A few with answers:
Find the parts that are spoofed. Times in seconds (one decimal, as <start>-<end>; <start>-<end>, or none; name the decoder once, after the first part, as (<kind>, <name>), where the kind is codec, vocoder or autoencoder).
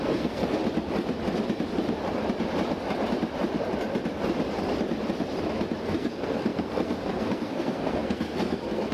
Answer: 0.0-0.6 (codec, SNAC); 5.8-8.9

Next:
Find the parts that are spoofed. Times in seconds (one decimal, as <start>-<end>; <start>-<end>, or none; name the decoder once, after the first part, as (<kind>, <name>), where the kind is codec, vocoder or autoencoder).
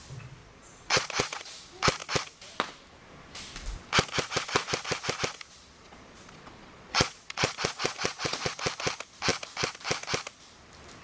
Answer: 0.4-1.6 (vocoder, Vocos); 5.8-8.6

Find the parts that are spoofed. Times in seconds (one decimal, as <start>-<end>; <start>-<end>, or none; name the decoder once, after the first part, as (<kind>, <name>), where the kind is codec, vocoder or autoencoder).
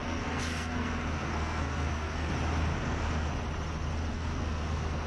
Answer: 0.0-2.3 (codec, SNAC); 2.7-3.3; 4.1-5.1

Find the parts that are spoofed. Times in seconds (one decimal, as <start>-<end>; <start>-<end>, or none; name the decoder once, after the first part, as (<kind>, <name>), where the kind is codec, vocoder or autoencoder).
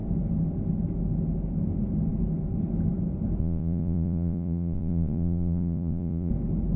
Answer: 3.4-6.3 (vocoder, Vocos)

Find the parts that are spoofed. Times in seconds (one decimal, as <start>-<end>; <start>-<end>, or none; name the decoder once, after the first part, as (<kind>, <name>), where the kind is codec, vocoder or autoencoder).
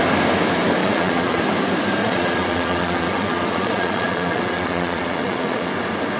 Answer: 0.8-1.4 (vocoder, Vocos); 2.0-5.7